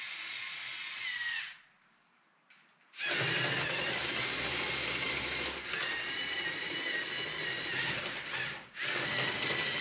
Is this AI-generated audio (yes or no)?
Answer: no